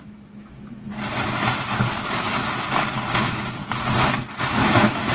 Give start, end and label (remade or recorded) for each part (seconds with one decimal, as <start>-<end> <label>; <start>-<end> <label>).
0.0-0.9 remade; 0.9-3.2 recorded; 3.2-3.6 remade; 3.6-4.4 recorded; 4.4-5.1 remade